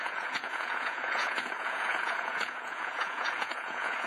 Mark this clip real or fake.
fake